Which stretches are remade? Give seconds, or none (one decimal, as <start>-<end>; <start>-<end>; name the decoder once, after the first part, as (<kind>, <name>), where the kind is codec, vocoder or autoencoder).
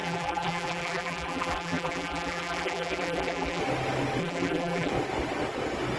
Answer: 0.0-3.6 (vocoder, BigVGAN v2); 4.2-4.9